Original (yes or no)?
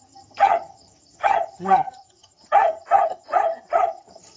no